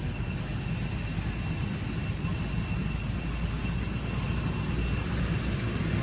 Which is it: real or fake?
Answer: real